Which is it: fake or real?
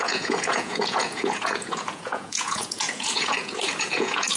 fake